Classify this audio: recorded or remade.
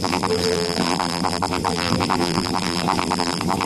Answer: remade